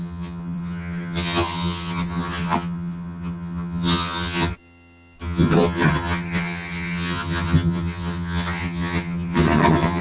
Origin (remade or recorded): remade